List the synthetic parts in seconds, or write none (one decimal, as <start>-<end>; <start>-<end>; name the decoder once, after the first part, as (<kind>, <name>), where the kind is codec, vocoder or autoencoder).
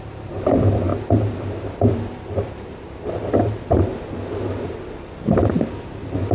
0.0-0.9 (vocoder, BigVGAN v2); 1.9-3.9